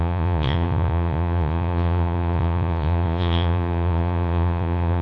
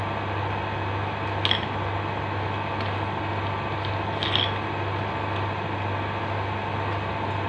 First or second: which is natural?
second